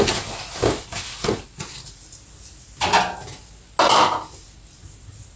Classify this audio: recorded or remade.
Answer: recorded